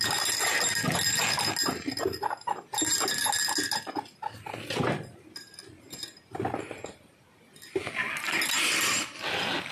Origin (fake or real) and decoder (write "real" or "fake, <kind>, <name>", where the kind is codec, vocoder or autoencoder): real